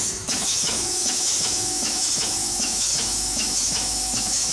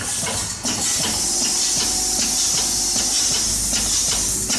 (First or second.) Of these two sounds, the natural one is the second